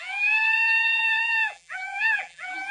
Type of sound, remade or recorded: remade